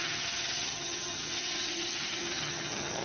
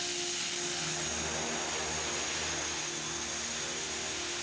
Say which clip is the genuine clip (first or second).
second